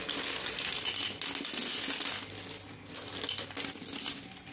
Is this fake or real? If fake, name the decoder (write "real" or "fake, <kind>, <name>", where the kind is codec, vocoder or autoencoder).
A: real